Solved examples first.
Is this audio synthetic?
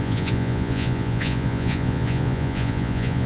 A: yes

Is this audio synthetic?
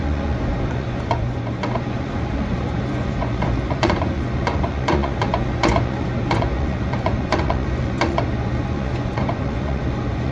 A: yes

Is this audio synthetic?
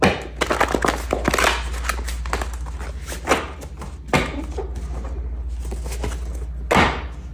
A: no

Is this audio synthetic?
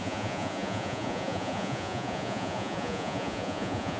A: yes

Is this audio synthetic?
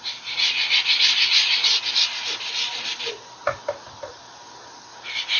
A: no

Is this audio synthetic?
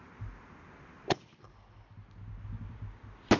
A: no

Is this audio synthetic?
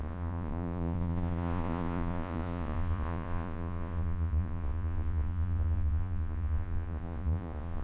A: yes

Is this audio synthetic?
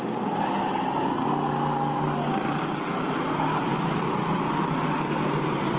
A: no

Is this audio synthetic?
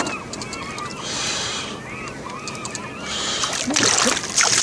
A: no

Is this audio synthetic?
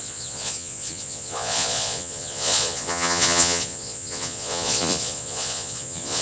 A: yes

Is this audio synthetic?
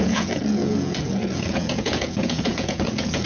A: yes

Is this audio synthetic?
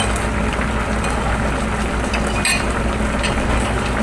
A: no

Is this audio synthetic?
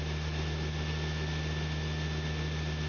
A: no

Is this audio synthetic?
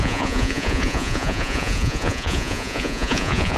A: yes